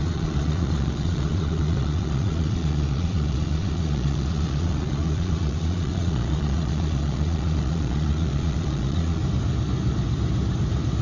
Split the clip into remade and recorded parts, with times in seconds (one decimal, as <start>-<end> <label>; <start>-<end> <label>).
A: 0.0-9.2 remade; 9.2-11.0 recorded